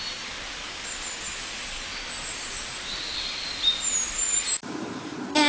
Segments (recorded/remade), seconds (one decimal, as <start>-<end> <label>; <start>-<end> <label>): 0.0-5.5 recorded